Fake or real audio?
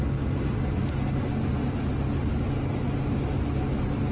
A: real